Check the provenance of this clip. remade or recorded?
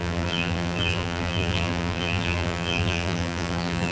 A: remade